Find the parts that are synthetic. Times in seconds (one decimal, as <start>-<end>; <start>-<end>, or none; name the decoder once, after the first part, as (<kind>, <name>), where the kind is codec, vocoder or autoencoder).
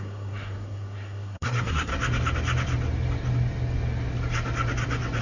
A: 0.0-1.9 (codec, SNAC)